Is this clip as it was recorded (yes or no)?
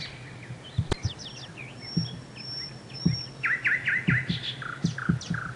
yes